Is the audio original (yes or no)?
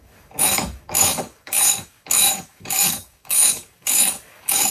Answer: no